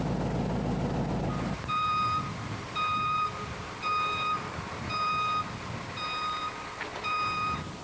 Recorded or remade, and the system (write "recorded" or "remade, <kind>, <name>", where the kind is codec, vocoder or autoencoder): recorded